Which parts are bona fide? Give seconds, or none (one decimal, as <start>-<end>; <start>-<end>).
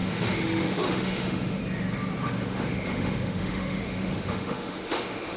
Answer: 1.6-2.2